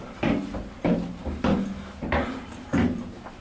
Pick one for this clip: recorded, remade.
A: recorded